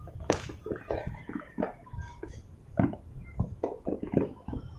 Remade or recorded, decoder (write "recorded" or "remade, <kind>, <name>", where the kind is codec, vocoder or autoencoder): remade, autoencoder, DAC-VAE